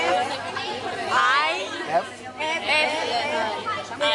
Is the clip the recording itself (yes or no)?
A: yes